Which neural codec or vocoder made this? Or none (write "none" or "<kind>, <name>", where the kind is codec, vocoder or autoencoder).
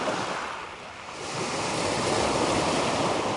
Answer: vocoder, BigVGAN v2